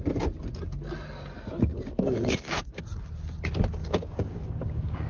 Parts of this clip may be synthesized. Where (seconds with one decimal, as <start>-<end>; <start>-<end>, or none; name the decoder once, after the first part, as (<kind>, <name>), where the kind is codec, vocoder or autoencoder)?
1.7-2.8 (codec, DAC); 3.8-5.1

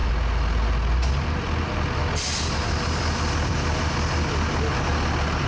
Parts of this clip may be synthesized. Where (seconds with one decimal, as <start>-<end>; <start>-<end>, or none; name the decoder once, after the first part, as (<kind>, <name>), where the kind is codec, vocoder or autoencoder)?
none

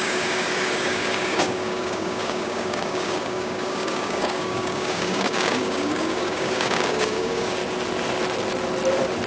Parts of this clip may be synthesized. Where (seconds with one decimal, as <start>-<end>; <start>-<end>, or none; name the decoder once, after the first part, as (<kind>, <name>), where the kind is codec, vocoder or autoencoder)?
0.0-7.6 (codec, DAC)

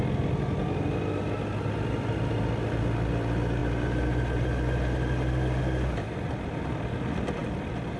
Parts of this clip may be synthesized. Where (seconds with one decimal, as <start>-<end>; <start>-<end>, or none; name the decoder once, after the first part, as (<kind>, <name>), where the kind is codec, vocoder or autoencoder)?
none

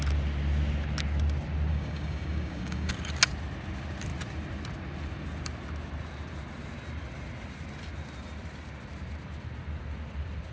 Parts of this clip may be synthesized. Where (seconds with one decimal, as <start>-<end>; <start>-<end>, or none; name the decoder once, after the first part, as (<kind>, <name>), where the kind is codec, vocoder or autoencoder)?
1.7-2.9 (codec, DAC)

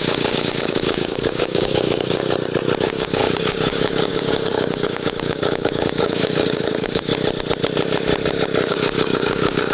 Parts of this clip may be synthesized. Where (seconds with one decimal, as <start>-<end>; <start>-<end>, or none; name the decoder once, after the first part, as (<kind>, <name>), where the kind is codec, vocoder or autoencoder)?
0.0-2.2 (codec, DAC); 2.8-7.1; 8.7-9.7

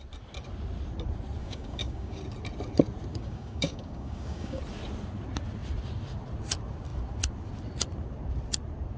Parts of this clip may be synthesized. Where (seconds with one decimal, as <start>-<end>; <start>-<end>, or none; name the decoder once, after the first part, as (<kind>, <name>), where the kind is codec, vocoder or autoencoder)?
1.4-2.2 (codec, DAC); 3.1-4.6